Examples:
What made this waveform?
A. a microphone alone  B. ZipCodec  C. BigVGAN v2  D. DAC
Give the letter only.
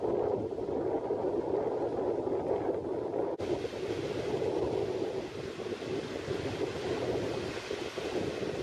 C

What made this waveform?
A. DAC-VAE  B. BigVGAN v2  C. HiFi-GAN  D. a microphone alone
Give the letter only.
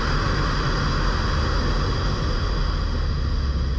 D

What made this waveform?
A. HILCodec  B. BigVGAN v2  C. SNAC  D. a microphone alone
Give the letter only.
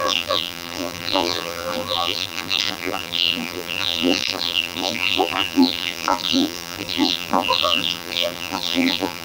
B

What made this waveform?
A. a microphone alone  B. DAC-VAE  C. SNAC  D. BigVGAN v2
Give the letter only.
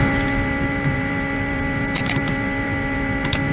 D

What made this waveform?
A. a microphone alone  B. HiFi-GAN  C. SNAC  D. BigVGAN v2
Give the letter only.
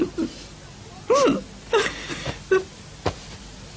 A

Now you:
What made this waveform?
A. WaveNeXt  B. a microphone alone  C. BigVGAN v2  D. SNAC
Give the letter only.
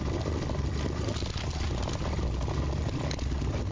B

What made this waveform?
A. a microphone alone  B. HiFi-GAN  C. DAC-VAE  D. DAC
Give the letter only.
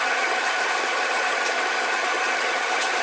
B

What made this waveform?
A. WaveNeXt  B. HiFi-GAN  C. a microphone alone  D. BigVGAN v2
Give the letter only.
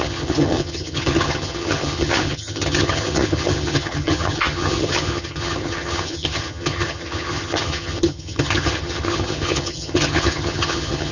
B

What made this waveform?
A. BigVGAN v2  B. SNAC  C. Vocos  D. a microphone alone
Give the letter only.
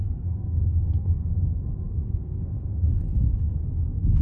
B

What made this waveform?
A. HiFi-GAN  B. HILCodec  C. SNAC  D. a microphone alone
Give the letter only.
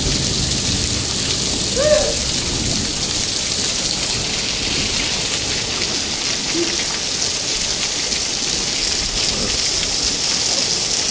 D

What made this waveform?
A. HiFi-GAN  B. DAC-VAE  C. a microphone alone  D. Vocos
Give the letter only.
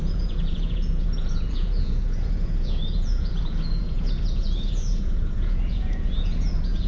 D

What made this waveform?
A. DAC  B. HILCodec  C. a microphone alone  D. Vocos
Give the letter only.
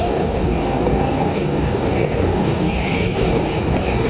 A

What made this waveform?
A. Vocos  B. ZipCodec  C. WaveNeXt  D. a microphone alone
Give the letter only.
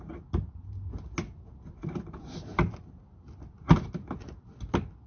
D